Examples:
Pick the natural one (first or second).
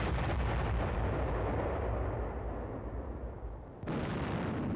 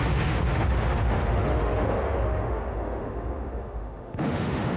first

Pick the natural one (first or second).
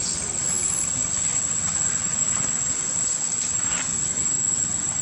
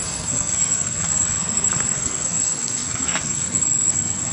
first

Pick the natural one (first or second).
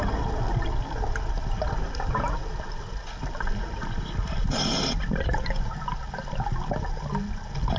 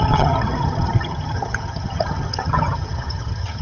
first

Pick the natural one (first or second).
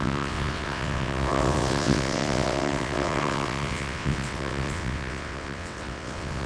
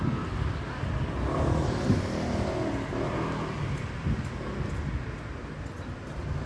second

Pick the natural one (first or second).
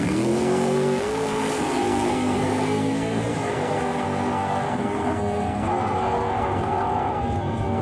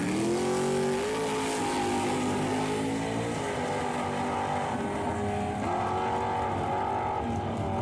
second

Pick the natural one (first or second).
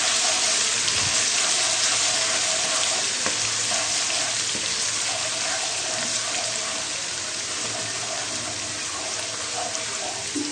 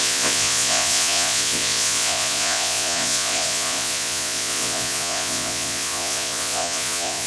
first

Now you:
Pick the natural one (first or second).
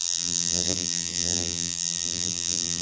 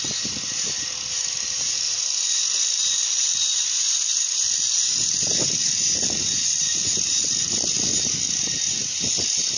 second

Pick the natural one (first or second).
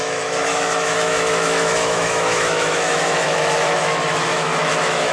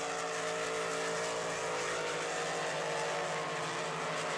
second